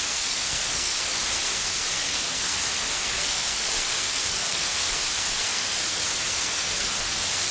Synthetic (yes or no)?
yes